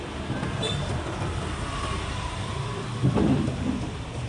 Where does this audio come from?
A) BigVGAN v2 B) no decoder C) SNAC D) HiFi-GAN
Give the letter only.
A